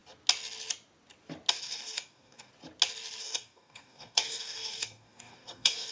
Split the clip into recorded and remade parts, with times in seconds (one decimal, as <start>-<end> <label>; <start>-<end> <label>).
0.0-1.5 recorded; 1.5-2.5 remade; 2.5-3.2 recorded; 3.2-5.9 remade